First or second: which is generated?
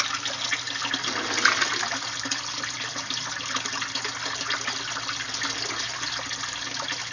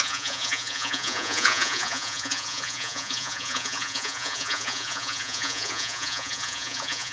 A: second